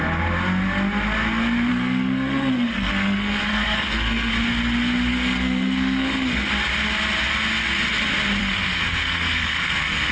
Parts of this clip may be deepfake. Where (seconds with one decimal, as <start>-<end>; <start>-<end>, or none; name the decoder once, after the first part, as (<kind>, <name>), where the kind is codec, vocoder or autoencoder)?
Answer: 1.7-4.3 (codec, SNAC); 5.1-6.5; 8.4-10.1